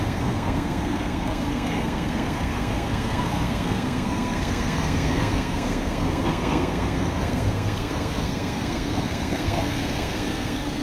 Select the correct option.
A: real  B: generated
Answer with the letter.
B